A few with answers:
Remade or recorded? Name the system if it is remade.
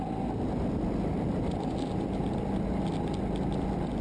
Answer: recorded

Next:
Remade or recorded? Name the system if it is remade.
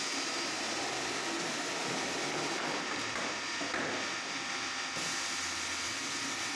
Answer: recorded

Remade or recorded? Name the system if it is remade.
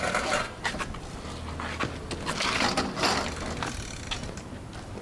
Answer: recorded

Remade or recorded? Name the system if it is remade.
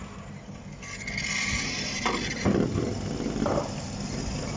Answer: recorded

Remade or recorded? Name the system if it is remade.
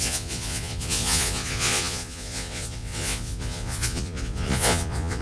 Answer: remade, vocoder, Vocos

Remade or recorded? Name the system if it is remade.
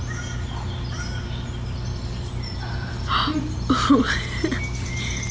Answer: recorded